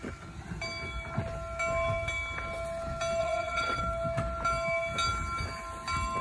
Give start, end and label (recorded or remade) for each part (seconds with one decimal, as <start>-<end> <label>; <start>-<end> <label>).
0.0-3.2 recorded; 3.2-3.8 remade; 3.8-6.2 recorded